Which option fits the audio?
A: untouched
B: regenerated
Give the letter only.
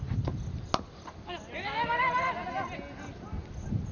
A